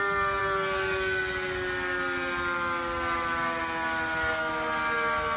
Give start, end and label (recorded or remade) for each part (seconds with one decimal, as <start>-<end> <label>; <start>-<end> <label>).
0.0-5.4 recorded